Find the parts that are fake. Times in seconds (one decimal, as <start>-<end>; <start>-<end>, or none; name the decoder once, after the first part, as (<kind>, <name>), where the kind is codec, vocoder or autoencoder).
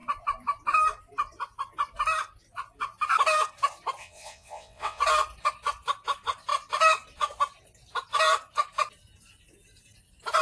4.0-5.0 (vocoder, WaveNeXt)